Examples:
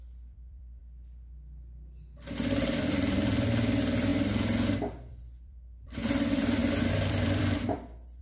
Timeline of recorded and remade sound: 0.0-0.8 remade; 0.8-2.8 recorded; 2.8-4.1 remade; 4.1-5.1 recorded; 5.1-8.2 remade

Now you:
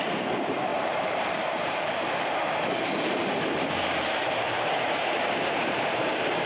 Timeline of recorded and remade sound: 0.0-6.5 remade

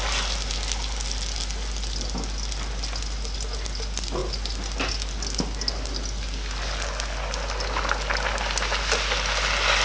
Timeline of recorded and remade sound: 0.0-9.8 recorded

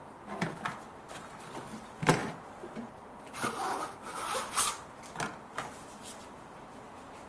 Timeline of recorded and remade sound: 0.0-7.3 recorded

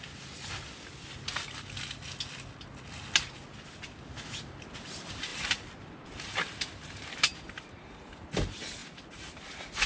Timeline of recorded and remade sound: 0.0-5.3 recorded; 5.3-8.3 remade; 8.3-9.9 recorded